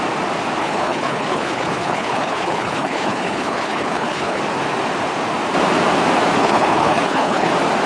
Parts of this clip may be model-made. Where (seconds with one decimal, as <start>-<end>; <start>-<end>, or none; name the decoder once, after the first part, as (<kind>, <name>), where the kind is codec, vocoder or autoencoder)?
0.6-4.4 (codec, HILCodec); 6.4-7.5